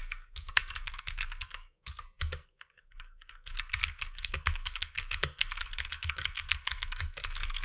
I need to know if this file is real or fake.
fake